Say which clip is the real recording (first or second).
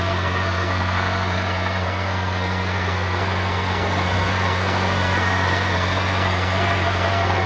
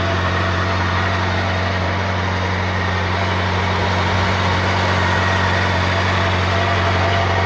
second